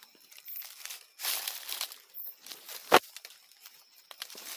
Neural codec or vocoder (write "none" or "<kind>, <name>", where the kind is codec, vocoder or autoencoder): none